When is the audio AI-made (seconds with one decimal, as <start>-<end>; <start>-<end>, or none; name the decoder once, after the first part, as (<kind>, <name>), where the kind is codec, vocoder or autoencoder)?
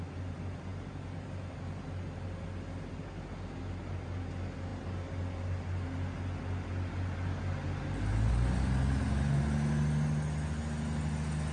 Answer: none